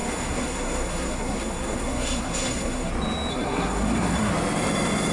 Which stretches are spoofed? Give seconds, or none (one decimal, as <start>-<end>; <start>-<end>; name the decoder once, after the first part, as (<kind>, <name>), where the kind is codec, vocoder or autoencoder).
0.0-2.9 (codec, SNAC); 3.3-4.3